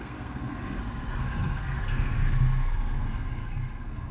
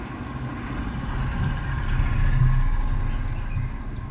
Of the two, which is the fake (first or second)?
first